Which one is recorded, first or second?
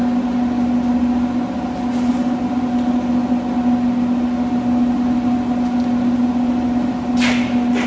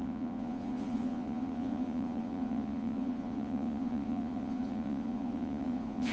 first